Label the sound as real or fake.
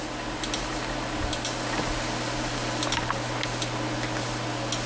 real